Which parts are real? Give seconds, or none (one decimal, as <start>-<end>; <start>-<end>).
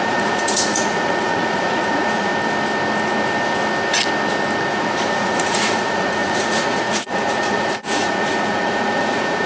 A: 2.3-4.7